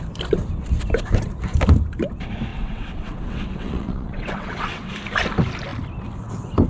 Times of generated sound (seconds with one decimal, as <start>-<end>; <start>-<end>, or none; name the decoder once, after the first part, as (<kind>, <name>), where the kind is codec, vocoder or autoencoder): 2.5-4.9 (vocoder, WaveNeXt)